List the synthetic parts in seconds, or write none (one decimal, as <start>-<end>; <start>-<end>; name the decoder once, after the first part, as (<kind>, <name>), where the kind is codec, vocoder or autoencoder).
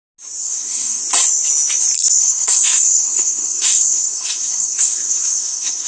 0.4-1.0 (codec, SNAC); 2.2-5.9